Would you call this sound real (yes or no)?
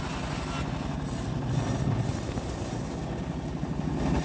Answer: yes